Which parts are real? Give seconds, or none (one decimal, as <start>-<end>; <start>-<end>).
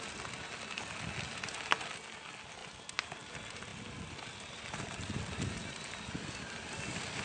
0.0-7.2